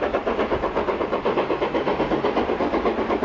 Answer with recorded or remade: recorded